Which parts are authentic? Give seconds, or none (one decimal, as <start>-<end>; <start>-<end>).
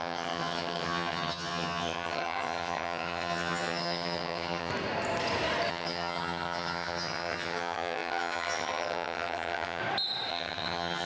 4.7-5.7; 9.8-10.3